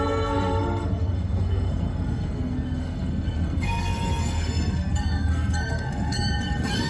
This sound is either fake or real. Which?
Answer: fake